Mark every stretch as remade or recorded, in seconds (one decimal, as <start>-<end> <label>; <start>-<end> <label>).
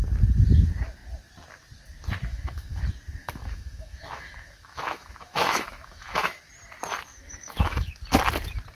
0.0-2.3 recorded; 2.3-2.8 remade; 2.8-3.2 recorded; 3.2-6.4 remade; 6.4-7.1 recorded; 7.1-7.9 remade; 7.9-8.7 recorded